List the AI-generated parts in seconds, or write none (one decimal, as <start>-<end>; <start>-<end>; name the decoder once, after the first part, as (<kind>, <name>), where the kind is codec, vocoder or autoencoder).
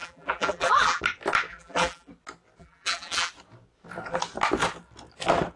0.0-1.0 (vocoder, BigVGAN v2); 1.5-2.1; 2.6-3.3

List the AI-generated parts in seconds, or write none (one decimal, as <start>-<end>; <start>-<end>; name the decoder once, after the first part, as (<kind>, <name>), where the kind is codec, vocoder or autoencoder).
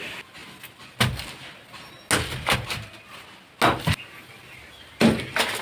none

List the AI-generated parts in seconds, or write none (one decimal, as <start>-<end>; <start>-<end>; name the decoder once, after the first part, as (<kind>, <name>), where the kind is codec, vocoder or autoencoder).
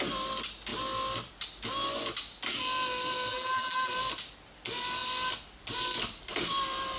3.3-3.9 (vocoder, BigVGAN v2)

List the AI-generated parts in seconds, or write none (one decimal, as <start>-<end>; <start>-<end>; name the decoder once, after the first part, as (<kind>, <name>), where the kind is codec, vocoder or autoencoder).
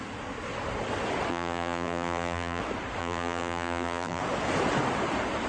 1.3-2.6 (vocoder, BigVGAN v2); 3.0-4.2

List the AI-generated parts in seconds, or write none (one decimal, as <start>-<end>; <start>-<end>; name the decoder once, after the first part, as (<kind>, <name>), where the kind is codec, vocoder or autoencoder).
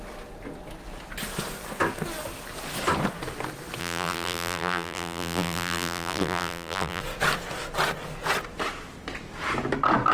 3.8-7.0 (vocoder, BigVGAN v2)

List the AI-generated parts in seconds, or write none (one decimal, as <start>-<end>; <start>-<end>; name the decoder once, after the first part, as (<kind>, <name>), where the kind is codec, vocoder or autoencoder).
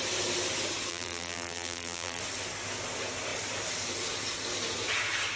0.9-2.2 (vocoder, BigVGAN v2)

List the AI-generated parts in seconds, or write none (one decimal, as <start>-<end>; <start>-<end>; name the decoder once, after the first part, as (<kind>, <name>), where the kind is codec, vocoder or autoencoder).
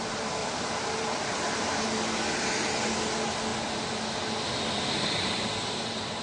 0.4-1.8 (vocoder, BigVGAN v2)